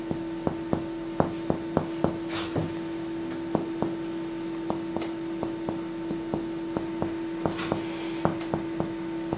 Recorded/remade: recorded